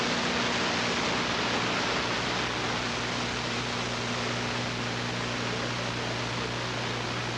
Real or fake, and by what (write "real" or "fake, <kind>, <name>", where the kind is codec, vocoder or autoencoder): real